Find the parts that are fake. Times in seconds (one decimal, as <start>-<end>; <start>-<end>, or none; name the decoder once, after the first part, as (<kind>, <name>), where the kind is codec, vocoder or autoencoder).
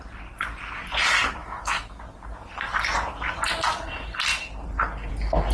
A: 1.4-2.0 (autoencoder, DAC-VAE)